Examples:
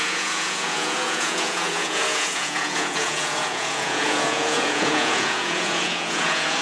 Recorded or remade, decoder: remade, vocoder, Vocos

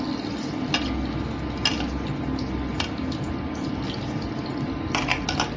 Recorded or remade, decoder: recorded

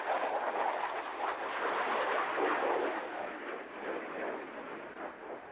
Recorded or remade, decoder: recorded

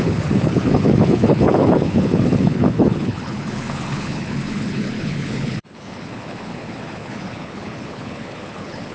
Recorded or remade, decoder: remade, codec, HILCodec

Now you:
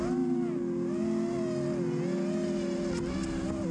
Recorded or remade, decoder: recorded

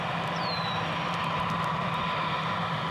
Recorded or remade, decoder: remade, vocoder, BigVGAN v2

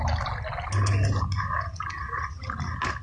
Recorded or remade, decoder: recorded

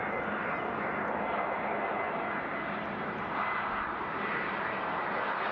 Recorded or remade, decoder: recorded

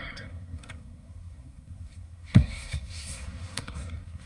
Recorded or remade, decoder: remade, codec, SNAC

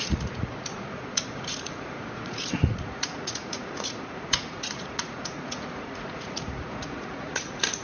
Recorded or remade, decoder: remade, vocoder, Vocos